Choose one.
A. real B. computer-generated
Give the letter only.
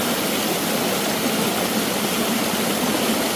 A